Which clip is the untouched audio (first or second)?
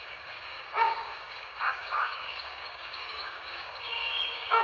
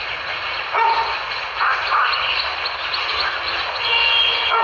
second